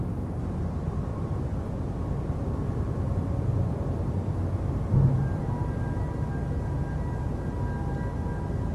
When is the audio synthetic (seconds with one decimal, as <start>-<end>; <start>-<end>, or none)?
1.1-4.4